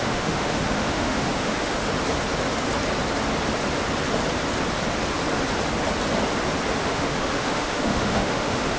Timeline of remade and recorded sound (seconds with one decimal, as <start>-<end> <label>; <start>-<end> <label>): 0.0-1.8 remade; 1.8-6.8 recorded; 6.8-8.8 remade